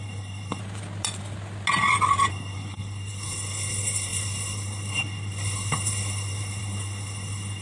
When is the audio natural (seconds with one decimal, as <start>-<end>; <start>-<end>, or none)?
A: 0.6-2.3